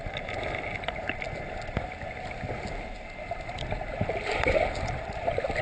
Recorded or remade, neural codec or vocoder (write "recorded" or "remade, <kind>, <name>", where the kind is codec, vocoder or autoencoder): recorded